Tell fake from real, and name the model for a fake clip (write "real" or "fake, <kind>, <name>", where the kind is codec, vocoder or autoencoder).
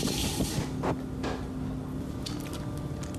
real